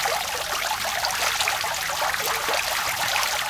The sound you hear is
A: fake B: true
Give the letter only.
B